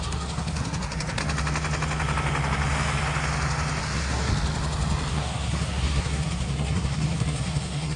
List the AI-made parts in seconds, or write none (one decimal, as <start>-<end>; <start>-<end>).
0.0-1.2; 3.8-4.3; 5.1-8.0